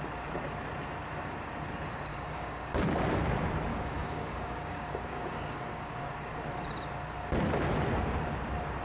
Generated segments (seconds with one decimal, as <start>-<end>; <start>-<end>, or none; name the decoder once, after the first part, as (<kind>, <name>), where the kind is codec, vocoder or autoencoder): 2.1-2.7 (codec, DAC); 3.7-6.1